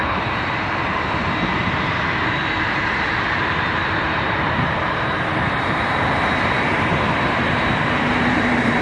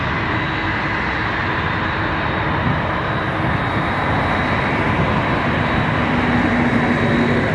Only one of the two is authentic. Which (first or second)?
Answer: second